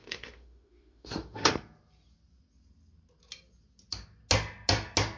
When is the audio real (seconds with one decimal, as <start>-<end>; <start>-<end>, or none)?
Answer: 1.5-5.2